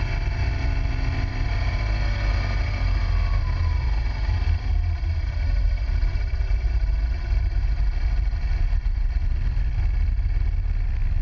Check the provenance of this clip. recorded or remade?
recorded